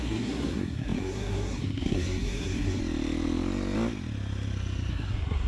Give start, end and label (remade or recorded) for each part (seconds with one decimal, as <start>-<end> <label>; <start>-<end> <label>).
0.0-2.8 remade; 2.8-4.9 recorded; 4.9-5.5 remade